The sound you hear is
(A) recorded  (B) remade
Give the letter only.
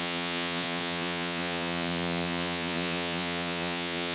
B